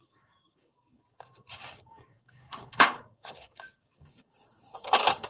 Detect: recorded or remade remade